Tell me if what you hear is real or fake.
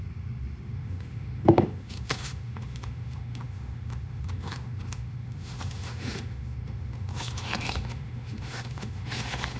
fake